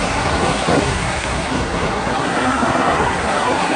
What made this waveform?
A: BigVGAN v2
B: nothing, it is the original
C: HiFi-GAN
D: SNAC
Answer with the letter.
D